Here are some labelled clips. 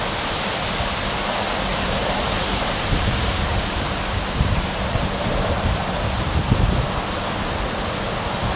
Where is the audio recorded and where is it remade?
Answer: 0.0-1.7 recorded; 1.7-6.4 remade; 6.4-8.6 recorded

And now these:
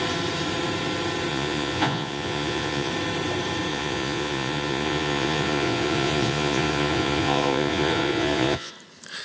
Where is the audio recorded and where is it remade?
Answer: 0.0-1.3 recorded; 1.3-2.9 remade; 2.9-3.7 recorded; 3.7-8.7 remade; 8.7-9.2 recorded

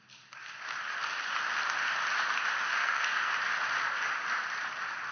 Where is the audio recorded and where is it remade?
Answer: 0.0-2.8 recorded; 2.8-3.3 remade; 3.3-5.1 recorded

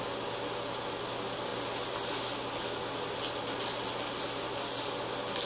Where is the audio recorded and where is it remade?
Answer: 0.0-5.5 recorded

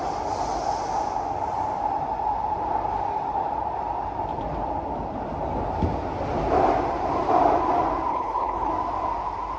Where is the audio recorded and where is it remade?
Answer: 0.0-8.1 recorded; 8.1-8.7 remade; 8.7-9.6 recorded

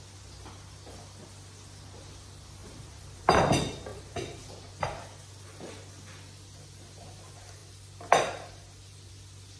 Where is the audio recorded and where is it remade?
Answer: 0.0-2.6 recorded; 2.6-3.4 remade; 3.4-9.6 recorded